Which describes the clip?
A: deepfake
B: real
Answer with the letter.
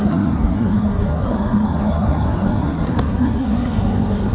A